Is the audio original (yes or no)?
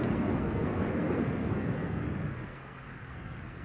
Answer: no